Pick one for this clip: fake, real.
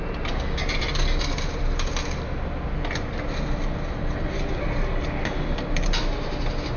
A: real